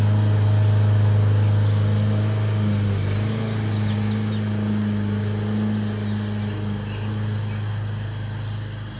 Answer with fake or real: real